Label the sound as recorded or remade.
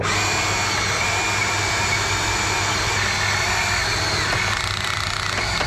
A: recorded